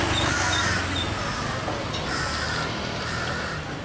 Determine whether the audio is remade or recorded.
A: recorded